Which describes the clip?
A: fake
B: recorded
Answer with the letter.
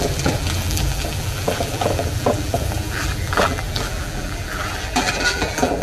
A